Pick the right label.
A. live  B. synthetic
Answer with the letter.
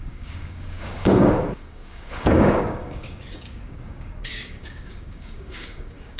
B